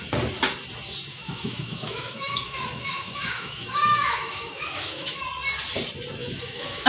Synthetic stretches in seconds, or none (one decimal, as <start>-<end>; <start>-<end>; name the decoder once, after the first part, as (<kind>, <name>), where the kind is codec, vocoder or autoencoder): 1.1-5.2 (autoencoder, DAC-VAE); 6.2-6.9